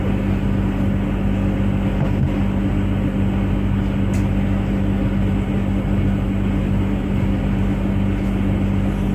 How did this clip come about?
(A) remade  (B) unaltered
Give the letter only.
B